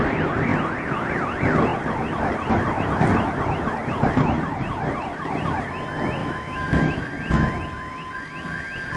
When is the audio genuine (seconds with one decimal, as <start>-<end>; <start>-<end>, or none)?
0.0-6.2; 7.0-9.0